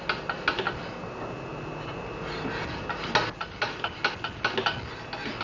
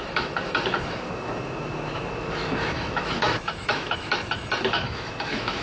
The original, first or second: first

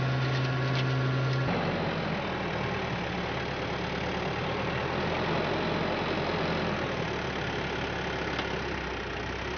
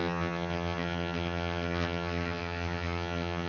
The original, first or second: first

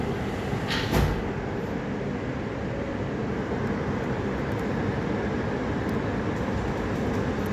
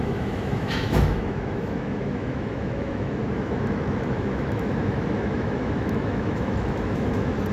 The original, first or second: first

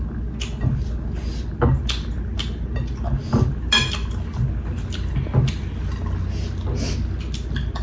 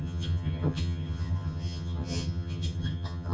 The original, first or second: first